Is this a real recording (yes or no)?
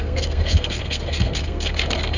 no